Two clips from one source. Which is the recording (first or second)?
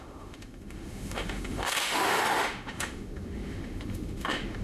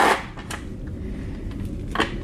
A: second